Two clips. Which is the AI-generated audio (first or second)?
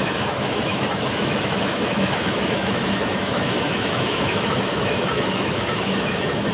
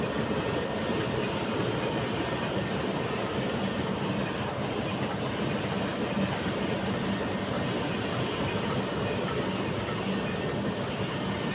first